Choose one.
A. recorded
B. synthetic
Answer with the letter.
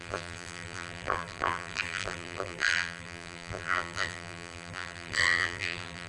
B